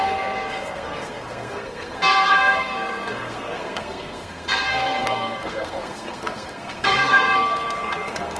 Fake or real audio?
fake